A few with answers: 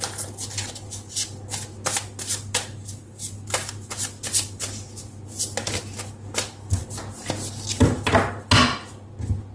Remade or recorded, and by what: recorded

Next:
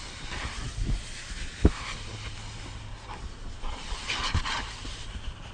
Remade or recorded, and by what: recorded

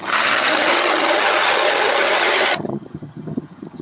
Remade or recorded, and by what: remade, vocoder, HiFi-GAN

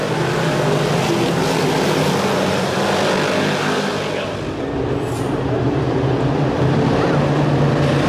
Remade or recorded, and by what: recorded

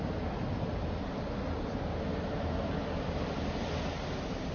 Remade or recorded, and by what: recorded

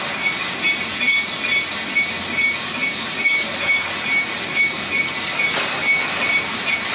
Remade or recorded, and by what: recorded